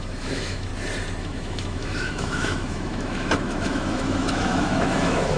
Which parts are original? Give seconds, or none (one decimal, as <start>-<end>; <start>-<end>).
0.7-1.2

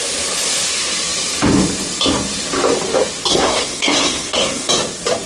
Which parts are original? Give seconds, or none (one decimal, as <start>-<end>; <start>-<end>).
0.0-3.3; 4.7-5.3

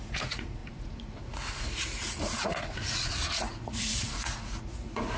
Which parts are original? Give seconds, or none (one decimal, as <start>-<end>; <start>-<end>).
none

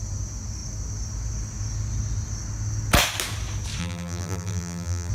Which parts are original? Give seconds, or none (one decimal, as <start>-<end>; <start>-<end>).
0.0-3.8

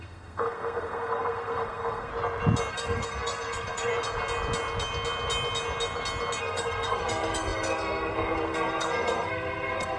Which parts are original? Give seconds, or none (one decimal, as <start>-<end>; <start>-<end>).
2.1-2.7; 3.9-6.4